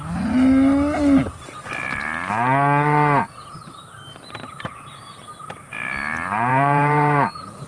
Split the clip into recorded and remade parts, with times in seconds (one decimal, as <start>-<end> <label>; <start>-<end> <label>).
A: 0.0-6.5 recorded; 6.5-7.3 remade; 7.3-7.7 recorded